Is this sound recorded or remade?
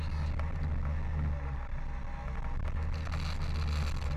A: recorded